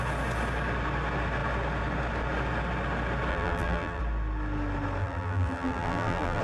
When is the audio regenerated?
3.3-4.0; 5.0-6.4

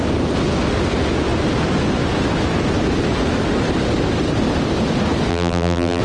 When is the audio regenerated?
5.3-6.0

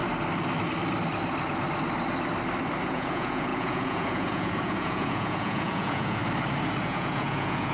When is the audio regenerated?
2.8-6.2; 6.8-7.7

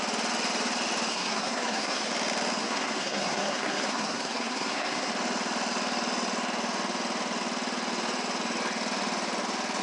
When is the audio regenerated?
1.1-2.1; 2.6-5.1